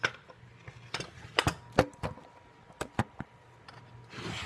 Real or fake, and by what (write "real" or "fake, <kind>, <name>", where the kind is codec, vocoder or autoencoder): real